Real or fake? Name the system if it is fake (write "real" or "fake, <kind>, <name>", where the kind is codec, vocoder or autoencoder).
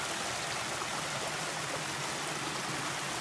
real